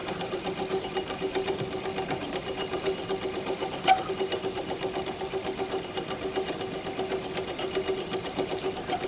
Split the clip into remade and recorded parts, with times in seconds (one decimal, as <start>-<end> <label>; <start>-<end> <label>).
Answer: 0.0-9.1 recorded